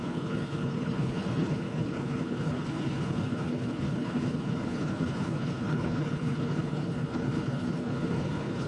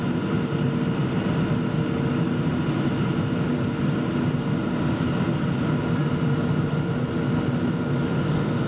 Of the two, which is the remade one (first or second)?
first